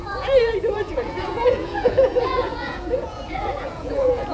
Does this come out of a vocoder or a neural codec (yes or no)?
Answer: yes